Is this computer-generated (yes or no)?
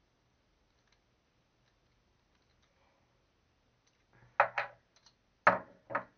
no